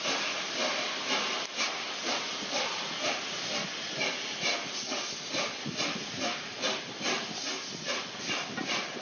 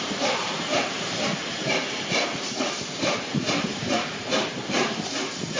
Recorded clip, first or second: first